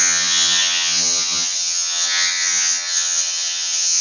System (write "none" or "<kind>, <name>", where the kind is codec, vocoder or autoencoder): vocoder, HiFi-GAN